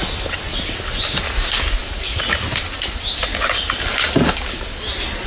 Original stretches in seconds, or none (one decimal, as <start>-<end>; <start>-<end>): 0.0-5.3